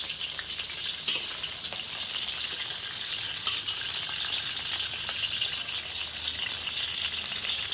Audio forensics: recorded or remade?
recorded